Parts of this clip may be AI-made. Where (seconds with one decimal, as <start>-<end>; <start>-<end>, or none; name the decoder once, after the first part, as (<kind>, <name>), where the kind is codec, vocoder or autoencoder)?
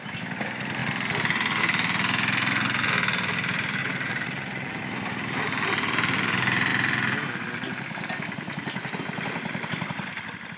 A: 3.8-4.8 (vocoder, WaveNeXt)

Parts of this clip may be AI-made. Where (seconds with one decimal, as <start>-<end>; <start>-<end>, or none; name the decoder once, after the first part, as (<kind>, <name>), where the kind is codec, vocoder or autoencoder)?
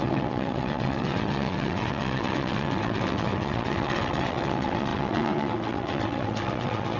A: 0.0-7.0 (vocoder, WaveNeXt)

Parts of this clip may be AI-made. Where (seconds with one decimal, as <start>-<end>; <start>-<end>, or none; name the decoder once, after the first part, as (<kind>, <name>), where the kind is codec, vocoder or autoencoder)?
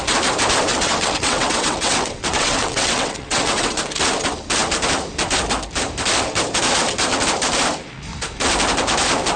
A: 0.7-3.8 (vocoder, WaveNeXt)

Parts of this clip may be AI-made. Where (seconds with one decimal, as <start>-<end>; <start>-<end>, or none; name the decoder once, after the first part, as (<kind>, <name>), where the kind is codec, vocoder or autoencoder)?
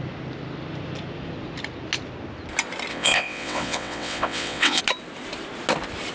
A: 2.9-4.8 (vocoder, WaveNeXt)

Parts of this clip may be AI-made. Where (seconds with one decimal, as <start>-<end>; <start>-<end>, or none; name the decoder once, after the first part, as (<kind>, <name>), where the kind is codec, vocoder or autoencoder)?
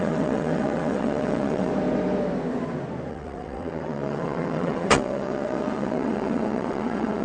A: 0.0-1.7 (vocoder, WaveNeXt); 3.1-7.2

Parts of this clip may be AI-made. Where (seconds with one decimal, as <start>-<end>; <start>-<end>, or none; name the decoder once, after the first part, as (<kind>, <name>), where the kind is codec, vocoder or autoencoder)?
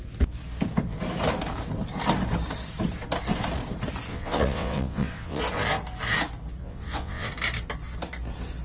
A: 4.1-5.4 (vocoder, WaveNeXt); 6.6-7.3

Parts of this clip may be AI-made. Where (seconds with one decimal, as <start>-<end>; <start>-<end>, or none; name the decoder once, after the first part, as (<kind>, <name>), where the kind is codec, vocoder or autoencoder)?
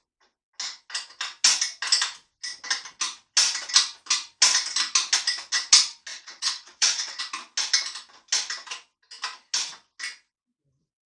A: 6.1-7.2 (vocoder, WaveNeXt)